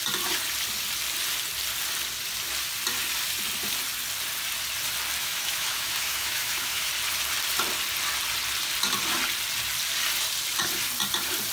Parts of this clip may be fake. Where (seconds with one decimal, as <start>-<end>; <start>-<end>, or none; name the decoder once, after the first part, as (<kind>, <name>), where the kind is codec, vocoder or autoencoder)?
5.2-6.9 (autoencoder, DAC-VAE)